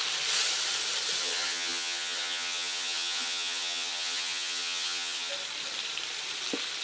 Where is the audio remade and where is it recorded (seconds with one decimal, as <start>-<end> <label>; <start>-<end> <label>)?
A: 0.0-1.2 recorded; 1.2-5.3 remade; 5.3-6.8 recorded